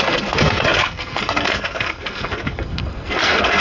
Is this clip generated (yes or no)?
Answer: yes